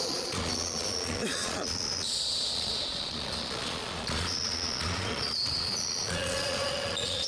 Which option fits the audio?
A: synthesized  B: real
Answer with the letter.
A